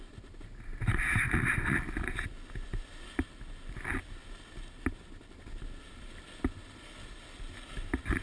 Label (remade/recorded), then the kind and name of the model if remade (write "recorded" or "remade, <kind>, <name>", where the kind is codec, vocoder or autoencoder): recorded